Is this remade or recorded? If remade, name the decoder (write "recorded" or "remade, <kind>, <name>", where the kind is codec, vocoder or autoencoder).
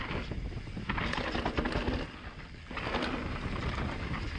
recorded